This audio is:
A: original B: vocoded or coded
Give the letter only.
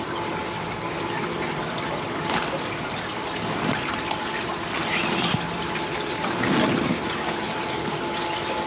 A